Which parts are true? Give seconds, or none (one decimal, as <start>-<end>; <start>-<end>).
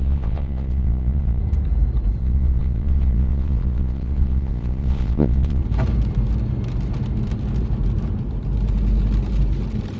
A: 1.4-2.2; 5.6-10.0